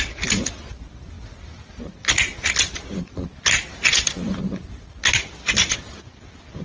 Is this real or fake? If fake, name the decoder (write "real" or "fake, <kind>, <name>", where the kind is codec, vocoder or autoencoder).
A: real